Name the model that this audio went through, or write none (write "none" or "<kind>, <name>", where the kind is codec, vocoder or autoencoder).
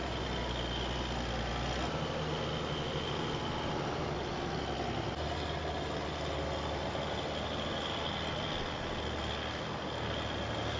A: none